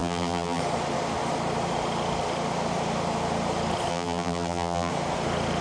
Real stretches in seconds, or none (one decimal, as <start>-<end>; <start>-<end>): 0.6-3.9; 4.9-5.6